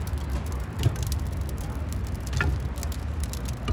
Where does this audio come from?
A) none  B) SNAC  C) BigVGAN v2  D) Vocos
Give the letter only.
A